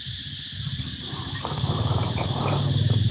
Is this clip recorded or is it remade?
remade